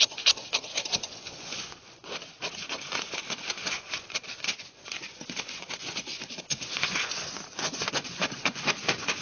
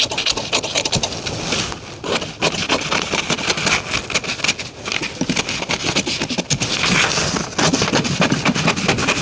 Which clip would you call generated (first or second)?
first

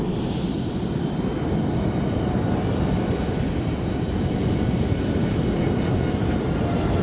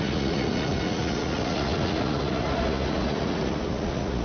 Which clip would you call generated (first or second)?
second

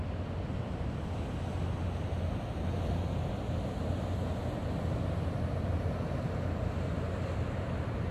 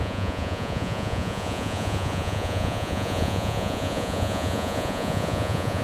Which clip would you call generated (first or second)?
second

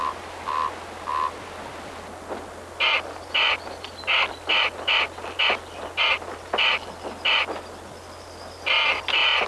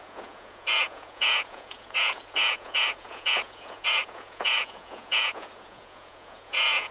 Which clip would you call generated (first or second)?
second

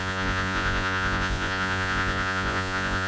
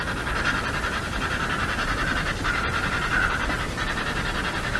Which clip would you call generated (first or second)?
first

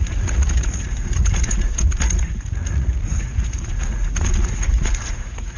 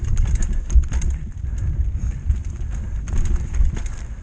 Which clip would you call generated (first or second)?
first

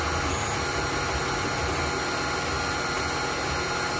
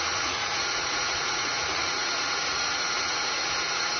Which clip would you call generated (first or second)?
second